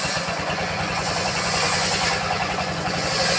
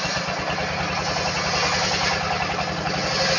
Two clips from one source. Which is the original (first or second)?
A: second